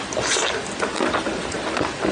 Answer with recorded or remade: recorded